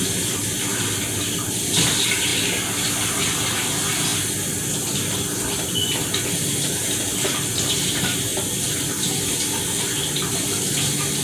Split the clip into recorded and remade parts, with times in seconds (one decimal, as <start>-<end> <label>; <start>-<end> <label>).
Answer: 0.0-11.2 recorded